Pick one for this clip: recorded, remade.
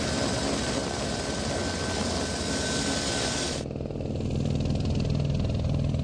recorded